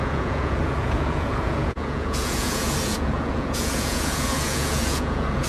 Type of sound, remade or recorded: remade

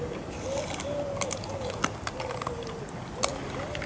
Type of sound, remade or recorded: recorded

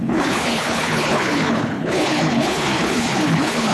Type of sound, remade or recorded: remade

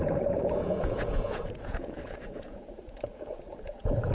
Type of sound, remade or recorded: remade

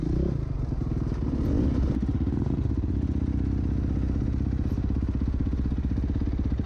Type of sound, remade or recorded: recorded